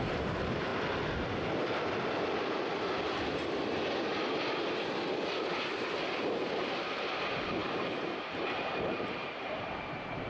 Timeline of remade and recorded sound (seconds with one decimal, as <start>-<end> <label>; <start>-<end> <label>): 0.0-0.7 remade; 0.7-5.3 recorded; 5.3-10.3 remade